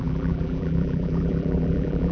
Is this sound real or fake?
fake